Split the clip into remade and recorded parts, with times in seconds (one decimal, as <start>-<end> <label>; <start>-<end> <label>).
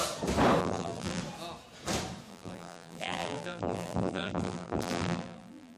0.0-0.6 recorded; 0.6-1.2 remade; 1.2-2.3 recorded; 2.3-5.8 remade